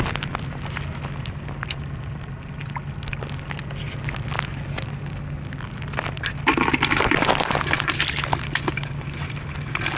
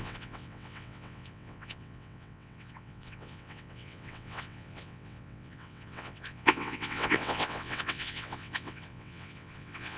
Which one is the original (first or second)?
first